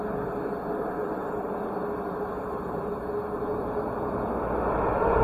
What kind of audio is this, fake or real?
real